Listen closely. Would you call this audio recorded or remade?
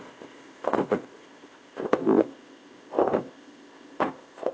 remade